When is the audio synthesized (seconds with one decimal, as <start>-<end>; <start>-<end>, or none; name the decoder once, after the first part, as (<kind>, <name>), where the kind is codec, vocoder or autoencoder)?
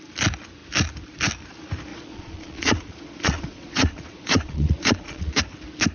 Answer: 1.9-5.4 (vocoder, Vocos)